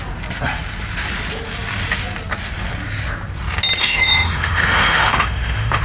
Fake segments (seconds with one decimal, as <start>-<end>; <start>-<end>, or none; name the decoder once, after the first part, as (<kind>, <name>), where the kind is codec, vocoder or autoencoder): 3.8-5.8 (autoencoder, DAC-VAE)